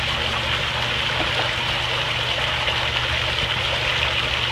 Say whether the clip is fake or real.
real